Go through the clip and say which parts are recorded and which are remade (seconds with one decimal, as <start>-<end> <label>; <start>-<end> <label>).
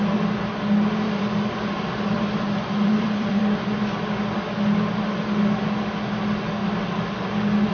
0.0-0.9 recorded; 0.9-3.4 remade; 3.4-7.7 recorded